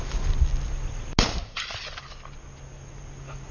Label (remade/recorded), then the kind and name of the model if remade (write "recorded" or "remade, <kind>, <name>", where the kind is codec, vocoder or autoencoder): recorded